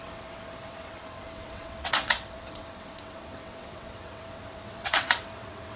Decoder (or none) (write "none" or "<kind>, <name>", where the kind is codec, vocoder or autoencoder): vocoder, WaveNeXt